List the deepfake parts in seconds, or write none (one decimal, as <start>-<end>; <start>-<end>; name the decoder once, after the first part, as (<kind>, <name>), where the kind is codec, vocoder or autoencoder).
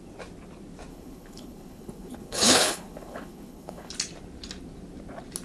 0.9-3.9 (codec, HILCodec)